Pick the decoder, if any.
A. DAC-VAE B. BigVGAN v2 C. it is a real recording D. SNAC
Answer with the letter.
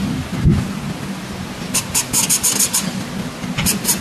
C